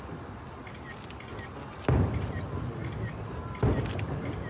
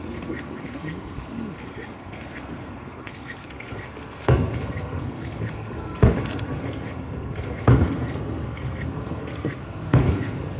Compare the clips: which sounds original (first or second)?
first